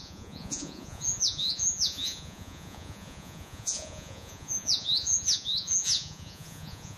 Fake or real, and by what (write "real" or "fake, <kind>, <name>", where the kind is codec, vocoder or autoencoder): fake, vocoder, Vocos